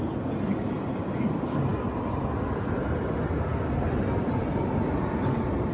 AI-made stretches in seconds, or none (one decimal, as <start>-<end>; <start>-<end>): none